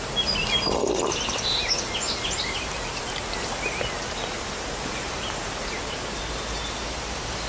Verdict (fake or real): real